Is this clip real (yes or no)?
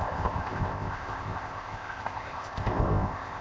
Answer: no